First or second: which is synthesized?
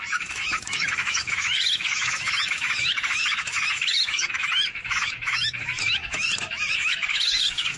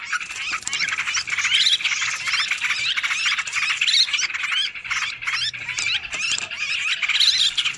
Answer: first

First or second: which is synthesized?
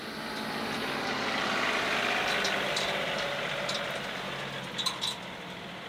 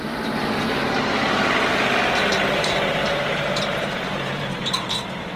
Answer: second